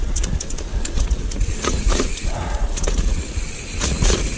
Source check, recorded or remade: remade